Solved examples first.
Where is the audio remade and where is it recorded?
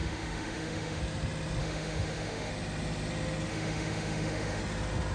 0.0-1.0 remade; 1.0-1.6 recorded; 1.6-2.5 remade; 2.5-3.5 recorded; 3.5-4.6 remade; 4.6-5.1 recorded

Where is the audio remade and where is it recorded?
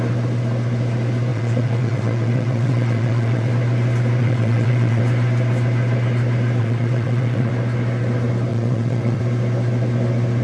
0.0-1.3 recorded; 1.3-3.5 remade; 3.5-4.2 recorded; 4.2-5.0 remade; 5.0-6.6 recorded; 6.6-7.5 remade; 7.5-8.5 recorded; 8.5-9.2 remade; 9.2-10.4 recorded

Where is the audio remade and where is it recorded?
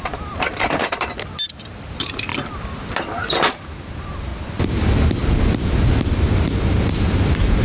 0.0-1.1 remade; 1.1-1.9 recorded; 1.9-2.3 remade; 2.3-3.5 recorded; 3.5-4.3 remade; 4.3-6.5 recorded; 6.5-7.6 remade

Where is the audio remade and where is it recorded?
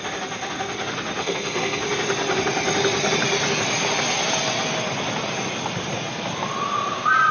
0.0-1.2 recorded; 1.2-1.8 remade; 1.8-7.3 recorded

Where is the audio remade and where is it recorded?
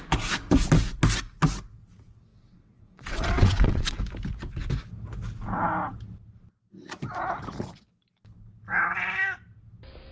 0.0-2.3 recorded; 2.3-4.0 remade; 4.0-10.1 recorded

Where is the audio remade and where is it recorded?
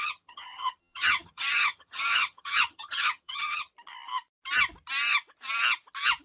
0.0-3.7 remade; 3.7-6.2 recorded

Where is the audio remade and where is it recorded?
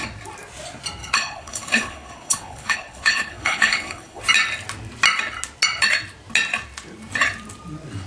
0.0-1.0 recorded; 1.0-4.2 remade; 4.2-8.1 recorded